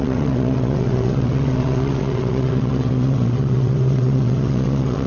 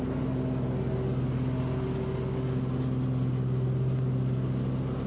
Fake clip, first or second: first